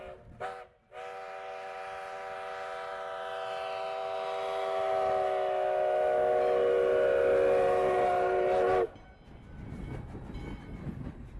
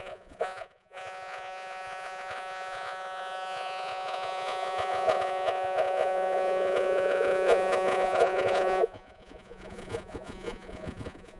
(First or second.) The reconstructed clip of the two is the second